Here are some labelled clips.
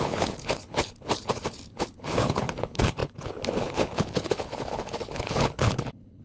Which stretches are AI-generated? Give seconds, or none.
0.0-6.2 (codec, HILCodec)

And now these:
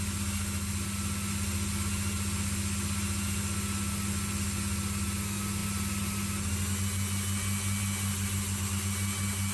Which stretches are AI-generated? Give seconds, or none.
none

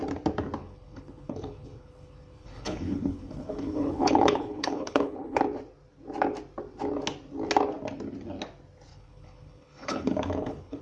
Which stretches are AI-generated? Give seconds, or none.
0.6-5.4 (codec, HILCodec); 8.9-10.8

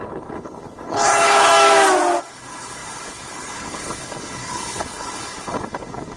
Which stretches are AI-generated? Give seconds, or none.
0.0-1.5 (codec, HILCodec); 2.2-6.2

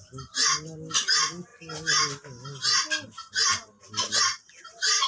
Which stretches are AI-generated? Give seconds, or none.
none

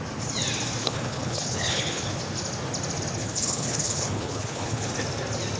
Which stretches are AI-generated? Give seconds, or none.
0.8-2.2 (codec, HILCodec); 3.2-4.9

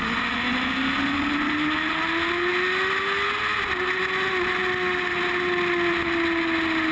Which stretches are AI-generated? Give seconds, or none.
none

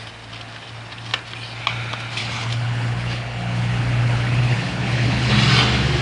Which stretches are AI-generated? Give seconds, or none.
2.2-5.3 (codec, HILCodec)